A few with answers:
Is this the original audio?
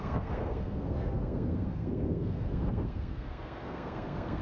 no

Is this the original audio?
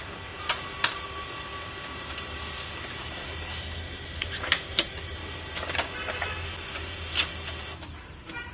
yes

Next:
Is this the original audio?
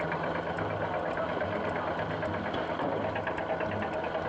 yes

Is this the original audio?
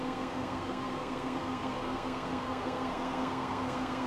no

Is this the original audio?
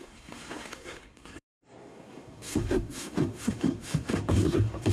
no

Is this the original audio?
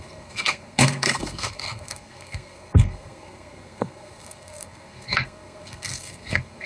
no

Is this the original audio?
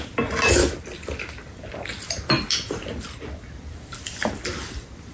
yes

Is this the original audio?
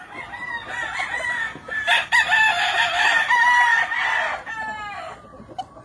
yes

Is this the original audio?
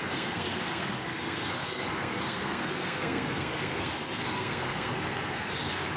no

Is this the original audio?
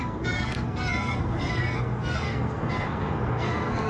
no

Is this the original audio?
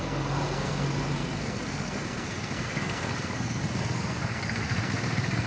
no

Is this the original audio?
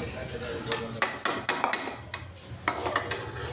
yes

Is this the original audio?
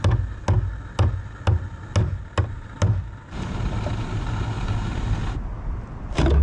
yes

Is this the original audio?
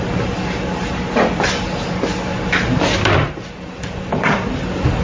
yes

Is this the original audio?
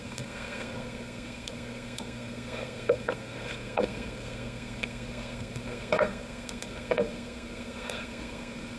no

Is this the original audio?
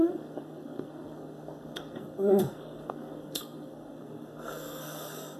no